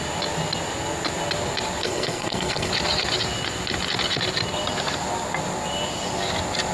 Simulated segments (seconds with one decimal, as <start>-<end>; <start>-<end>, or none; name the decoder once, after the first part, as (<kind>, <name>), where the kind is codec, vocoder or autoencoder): 1.8-2.7 (codec, SNAC)